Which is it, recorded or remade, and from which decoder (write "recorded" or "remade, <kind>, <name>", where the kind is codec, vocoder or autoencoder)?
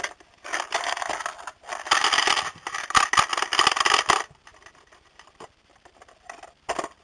recorded